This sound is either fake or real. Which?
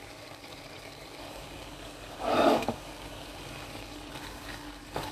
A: fake